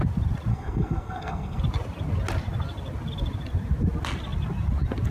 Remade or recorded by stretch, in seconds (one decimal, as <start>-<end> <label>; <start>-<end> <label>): 0.0-0.5 recorded; 0.5-1.6 remade; 1.6-5.1 recorded